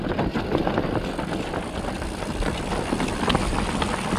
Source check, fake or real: real